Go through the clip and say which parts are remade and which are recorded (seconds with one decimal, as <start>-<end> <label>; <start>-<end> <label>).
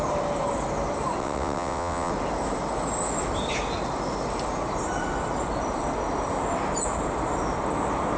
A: 0.0-1.2 recorded; 1.2-2.1 remade; 2.1-8.2 recorded